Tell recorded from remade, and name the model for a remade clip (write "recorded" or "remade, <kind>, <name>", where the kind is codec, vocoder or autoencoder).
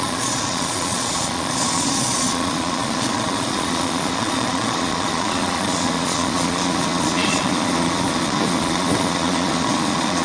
remade, vocoder, Vocos